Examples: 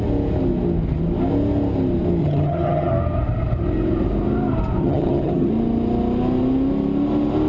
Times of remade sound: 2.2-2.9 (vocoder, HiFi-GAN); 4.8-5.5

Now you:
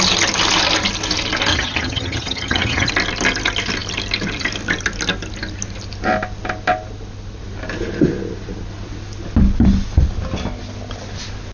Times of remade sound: 1.5-2.9 (vocoder, HiFi-GAN)